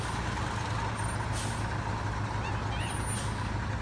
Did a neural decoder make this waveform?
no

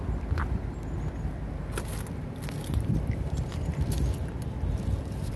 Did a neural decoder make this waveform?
no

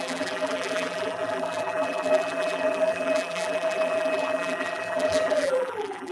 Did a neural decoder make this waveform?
yes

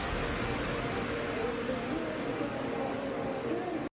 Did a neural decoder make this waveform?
no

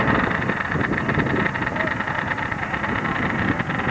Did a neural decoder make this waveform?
no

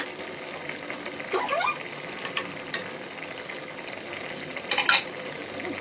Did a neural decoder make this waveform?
no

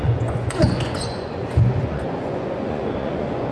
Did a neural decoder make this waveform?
yes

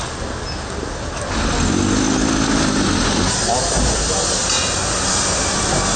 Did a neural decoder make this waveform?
no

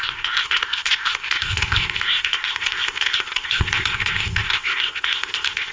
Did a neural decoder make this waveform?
yes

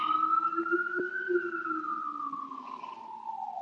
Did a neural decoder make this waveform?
no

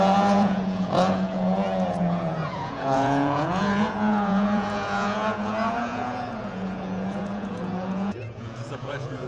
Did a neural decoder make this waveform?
yes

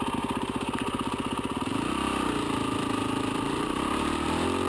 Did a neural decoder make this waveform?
yes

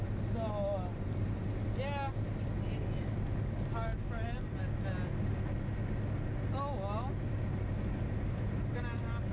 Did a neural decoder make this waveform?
no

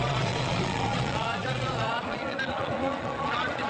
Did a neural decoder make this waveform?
yes